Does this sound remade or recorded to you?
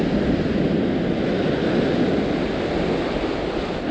recorded